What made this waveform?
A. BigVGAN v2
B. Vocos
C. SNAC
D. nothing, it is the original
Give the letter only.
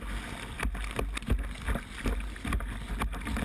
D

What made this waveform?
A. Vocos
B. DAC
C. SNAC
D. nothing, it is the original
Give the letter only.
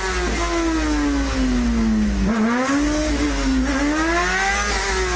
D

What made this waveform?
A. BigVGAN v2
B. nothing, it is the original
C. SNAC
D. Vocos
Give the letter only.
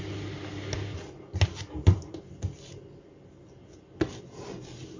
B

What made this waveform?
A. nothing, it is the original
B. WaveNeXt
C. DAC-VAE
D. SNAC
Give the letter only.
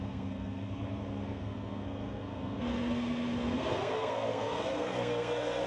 D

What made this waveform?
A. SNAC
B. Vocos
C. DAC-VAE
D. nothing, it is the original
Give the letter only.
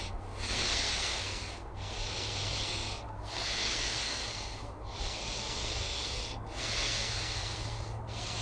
A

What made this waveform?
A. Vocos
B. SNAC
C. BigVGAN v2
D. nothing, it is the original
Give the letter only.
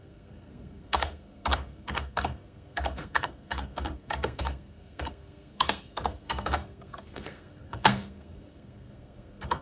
B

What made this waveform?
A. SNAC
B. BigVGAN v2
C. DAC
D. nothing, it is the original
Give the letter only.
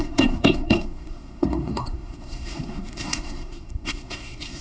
A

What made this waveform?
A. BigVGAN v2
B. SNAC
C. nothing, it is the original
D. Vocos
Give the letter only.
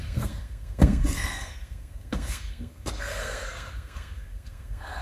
B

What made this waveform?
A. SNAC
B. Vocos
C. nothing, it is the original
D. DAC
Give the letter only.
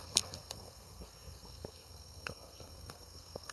A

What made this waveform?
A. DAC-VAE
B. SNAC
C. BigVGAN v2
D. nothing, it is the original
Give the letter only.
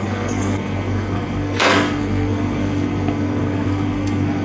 B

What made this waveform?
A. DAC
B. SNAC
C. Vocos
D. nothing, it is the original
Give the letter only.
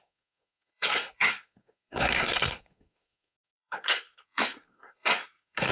B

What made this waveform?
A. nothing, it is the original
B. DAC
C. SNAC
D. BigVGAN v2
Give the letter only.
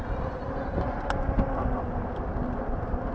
A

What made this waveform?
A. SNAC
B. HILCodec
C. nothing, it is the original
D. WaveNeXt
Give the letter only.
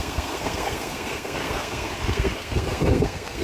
A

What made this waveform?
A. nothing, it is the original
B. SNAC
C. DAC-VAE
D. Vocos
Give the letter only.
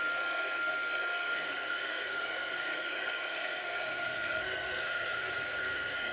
B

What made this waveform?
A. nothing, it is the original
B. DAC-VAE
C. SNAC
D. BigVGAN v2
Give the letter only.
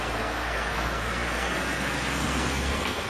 C